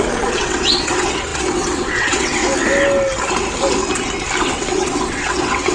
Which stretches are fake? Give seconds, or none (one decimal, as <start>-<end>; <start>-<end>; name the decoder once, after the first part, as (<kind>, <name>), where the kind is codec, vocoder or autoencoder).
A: 0.0-2.4 (vocoder, WaveNeXt); 4.4-5.7